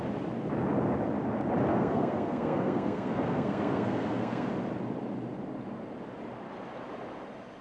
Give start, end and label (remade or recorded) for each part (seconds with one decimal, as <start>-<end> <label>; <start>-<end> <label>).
0.0-1.7 recorded; 1.7-4.5 remade; 4.5-7.6 recorded